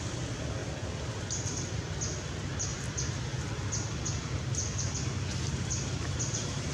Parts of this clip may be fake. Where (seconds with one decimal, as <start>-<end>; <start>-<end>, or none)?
0.6-1.2